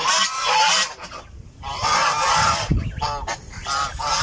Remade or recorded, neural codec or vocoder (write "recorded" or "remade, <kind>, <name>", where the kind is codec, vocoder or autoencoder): recorded